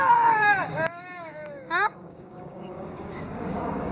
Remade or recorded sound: remade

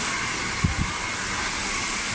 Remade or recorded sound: recorded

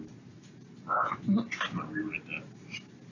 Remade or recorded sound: recorded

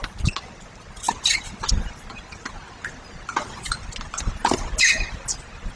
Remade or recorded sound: recorded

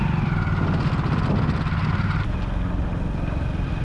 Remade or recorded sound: recorded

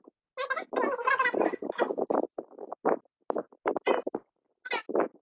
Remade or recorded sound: recorded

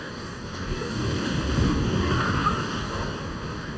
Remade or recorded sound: remade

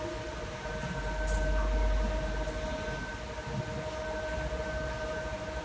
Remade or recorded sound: recorded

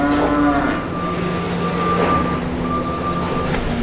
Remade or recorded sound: recorded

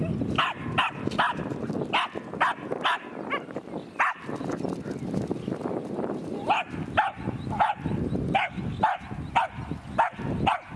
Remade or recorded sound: recorded